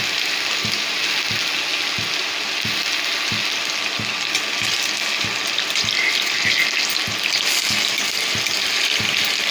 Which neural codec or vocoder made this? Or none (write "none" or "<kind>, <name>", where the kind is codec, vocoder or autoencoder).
none